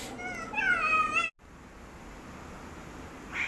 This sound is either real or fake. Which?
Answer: real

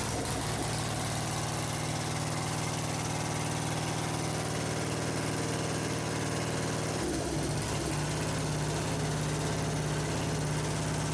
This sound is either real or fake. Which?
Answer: real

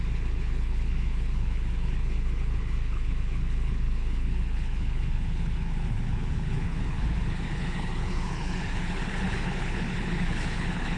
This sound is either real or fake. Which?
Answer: fake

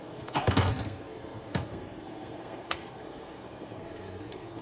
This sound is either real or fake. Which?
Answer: fake